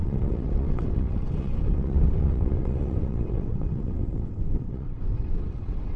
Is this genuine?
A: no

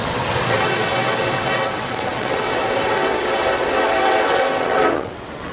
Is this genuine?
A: no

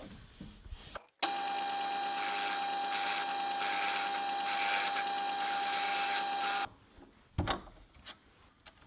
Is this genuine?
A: yes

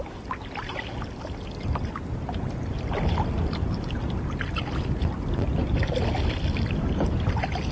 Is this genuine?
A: yes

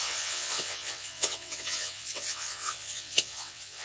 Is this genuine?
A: no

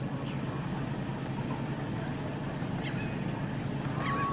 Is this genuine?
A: yes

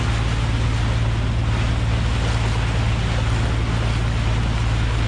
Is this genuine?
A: yes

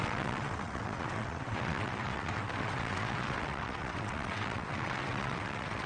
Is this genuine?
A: no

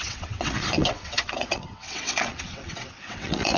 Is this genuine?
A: no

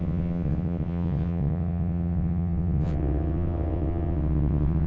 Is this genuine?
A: no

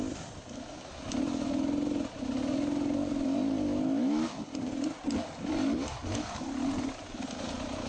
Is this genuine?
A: yes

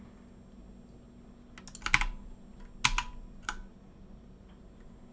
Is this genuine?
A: yes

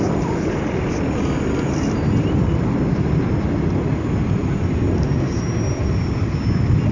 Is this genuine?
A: yes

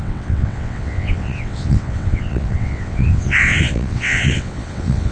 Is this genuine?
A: no